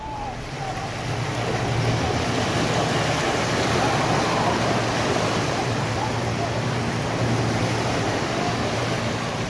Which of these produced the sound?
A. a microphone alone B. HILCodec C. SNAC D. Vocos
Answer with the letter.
A